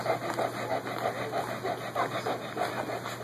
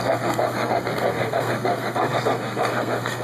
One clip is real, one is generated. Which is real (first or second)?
first